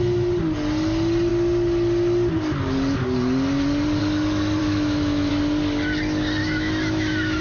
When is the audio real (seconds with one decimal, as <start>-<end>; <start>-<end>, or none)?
0.0-4.6; 5.3-6.4